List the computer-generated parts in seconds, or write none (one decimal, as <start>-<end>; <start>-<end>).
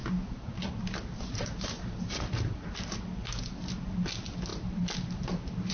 none